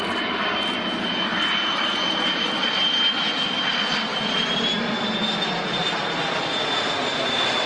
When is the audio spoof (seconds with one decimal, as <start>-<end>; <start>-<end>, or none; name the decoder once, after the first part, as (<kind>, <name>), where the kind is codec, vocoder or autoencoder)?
none